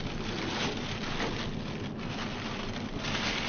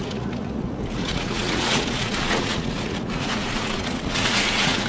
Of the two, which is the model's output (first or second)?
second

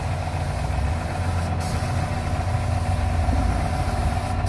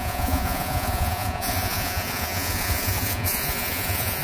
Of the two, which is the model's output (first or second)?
second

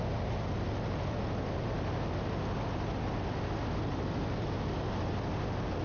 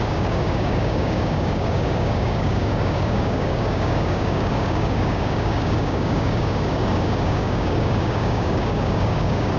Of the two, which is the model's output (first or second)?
second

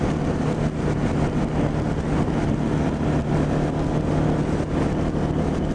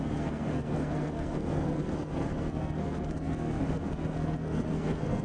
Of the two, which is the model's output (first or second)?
second